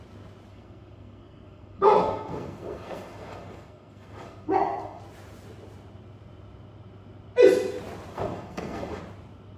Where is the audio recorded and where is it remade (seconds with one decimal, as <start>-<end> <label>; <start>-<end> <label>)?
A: 0.0-0.5 recorded; 0.5-5.0 remade; 5.0-8.1 recorded; 8.1-9.0 remade; 9.0-9.6 recorded